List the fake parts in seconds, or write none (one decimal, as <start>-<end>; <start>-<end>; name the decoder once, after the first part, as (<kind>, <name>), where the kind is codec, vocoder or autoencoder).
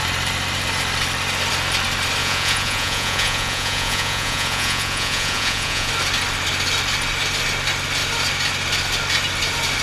2.2-5.9 (vocoder, Vocos)